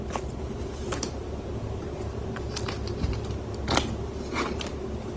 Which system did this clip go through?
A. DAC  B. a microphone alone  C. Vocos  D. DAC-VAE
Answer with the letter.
B